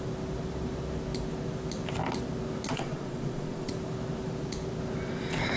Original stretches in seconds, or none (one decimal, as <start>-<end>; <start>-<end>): 0.0-2.7; 3.7-5.6

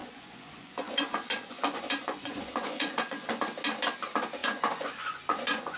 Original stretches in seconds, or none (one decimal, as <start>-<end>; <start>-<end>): 3.4-4.4

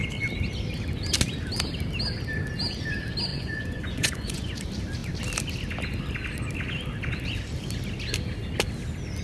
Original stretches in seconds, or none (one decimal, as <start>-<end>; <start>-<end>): 0.0-3.3; 4.6-9.2